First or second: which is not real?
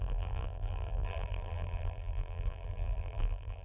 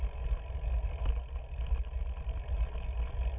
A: first